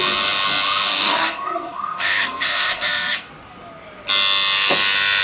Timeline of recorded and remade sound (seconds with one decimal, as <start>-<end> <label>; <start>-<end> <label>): 0.0-0.9 recorded; 0.9-3.3 remade; 3.3-5.2 recorded